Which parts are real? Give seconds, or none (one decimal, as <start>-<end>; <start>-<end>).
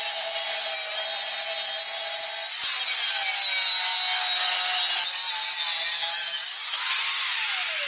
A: 0.0-7.9